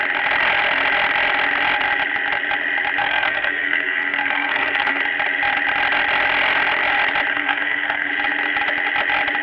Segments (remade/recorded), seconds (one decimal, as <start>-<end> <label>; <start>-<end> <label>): 0.0-3.0 recorded; 3.0-5.0 remade; 5.0-7.3 recorded; 7.3-8.1 remade; 8.1-9.4 recorded